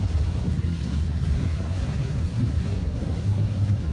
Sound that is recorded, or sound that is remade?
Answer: remade